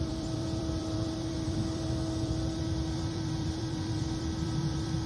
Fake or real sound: fake